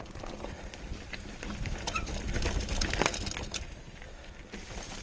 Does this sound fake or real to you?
real